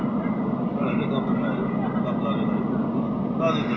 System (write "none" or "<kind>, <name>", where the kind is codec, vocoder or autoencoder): none